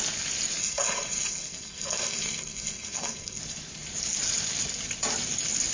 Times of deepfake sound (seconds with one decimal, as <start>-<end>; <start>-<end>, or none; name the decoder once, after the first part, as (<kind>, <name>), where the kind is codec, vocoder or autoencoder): 0.6-3.4 (codec, SNAC)